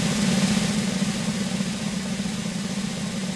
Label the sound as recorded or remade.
recorded